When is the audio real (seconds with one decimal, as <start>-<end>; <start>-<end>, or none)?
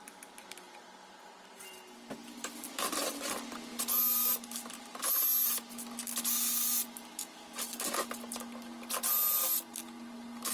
0.0-10.5